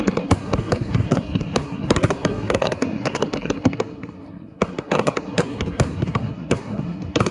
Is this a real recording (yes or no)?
no